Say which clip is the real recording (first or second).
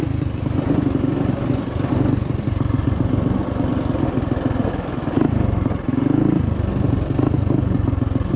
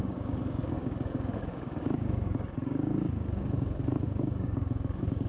first